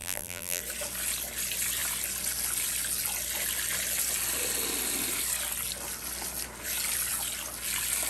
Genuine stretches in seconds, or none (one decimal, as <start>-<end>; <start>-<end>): 0.6-8.1